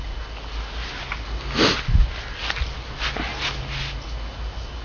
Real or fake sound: real